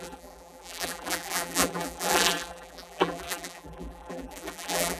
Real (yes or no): no